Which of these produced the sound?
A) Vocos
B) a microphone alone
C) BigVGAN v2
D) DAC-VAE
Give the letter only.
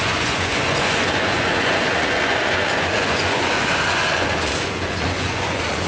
A